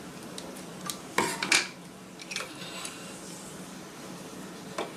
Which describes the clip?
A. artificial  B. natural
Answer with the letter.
B